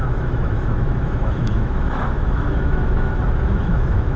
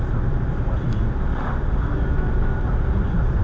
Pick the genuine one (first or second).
second